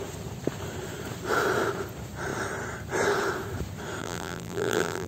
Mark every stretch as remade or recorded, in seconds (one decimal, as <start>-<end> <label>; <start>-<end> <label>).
0.0-4.0 recorded; 4.0-5.1 remade

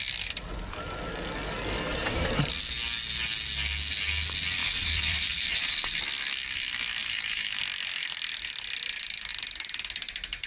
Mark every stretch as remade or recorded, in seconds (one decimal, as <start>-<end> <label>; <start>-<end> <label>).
0.0-1.9 recorded; 1.9-2.5 remade; 2.5-4.6 recorded; 4.6-6.0 remade; 6.0-7.0 recorded; 7.0-7.6 remade; 7.6-10.5 recorded

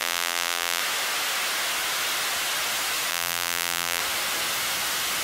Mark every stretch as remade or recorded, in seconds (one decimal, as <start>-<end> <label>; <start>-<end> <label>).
0.0-0.8 remade; 0.8-3.1 recorded; 3.1-4.0 remade; 4.0-5.2 recorded

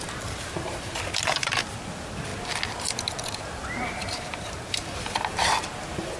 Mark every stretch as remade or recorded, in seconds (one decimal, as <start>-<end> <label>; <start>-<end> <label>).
0.0-2.3 remade; 2.3-3.1 recorded; 3.1-6.2 remade

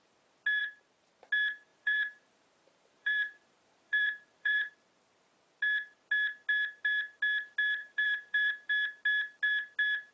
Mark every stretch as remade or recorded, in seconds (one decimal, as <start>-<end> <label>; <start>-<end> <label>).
0.0-0.6 recorded; 0.6-1.2 remade; 1.2-1.7 recorded; 1.7-4.7 remade; 4.7-7.8 recorded; 7.8-8.7 remade; 8.7-10.1 recorded

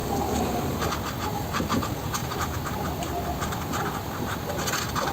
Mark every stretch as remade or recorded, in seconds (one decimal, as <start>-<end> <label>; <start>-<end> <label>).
0.0-0.9 remade; 0.9-1.3 recorded; 1.3-1.8 remade; 1.8-2.2 recorded; 2.2-4.5 remade; 4.5-5.1 recorded